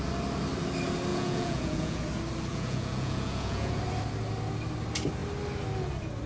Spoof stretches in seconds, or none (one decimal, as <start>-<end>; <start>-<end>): 1.1-2.0; 2.5-3.8